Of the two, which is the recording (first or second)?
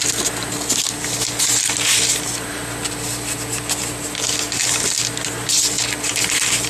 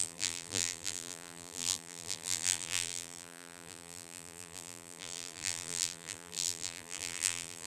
first